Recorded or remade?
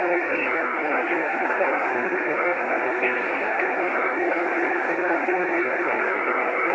remade